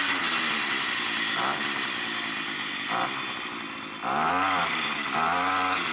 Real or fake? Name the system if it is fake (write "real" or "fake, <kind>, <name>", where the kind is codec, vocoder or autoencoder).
real